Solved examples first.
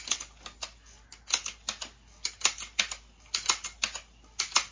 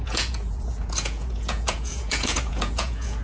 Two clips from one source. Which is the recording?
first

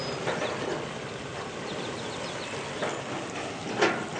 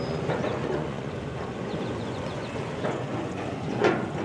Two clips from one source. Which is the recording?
first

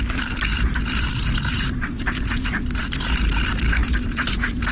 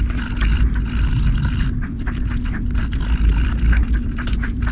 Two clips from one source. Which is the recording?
second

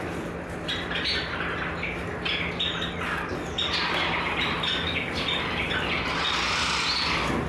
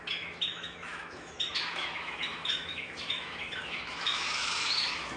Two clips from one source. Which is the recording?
first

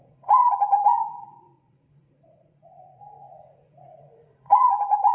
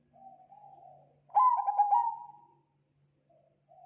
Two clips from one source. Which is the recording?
second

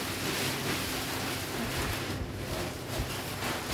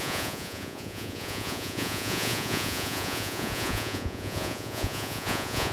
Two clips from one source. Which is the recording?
first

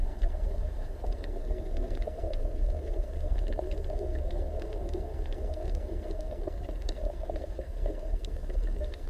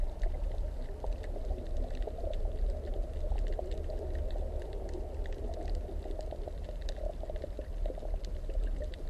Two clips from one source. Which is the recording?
second